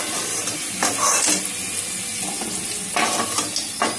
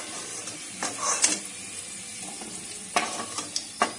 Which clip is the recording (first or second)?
first